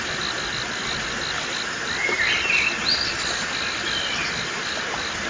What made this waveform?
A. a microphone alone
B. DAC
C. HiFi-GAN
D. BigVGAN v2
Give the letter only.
A